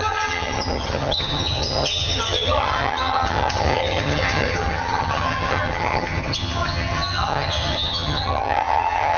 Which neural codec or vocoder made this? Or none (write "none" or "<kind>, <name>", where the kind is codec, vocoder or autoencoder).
vocoder, HiFi-GAN